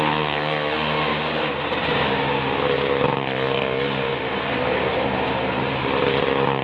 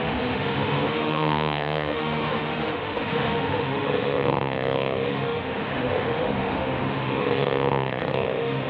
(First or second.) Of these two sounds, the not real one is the second